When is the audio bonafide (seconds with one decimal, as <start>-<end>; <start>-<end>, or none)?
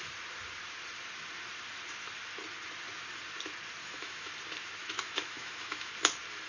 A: 0.0-3.8; 4.3-4.8; 5.9-6.5